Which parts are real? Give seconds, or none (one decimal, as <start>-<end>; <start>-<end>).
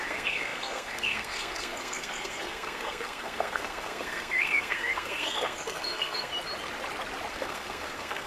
6.3-7.3